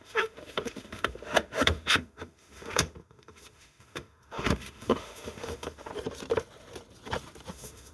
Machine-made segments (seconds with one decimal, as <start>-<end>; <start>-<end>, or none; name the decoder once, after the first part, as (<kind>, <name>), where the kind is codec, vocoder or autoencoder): 0.0-5.9 (autoencoder, DAC-VAE); 7.5-7.9